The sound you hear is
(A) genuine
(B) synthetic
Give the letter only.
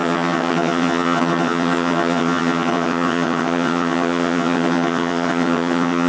B